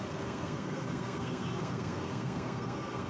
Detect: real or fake fake